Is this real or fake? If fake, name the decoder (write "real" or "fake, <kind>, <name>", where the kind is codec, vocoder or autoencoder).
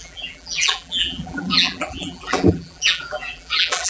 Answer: fake, vocoder, BigVGAN v2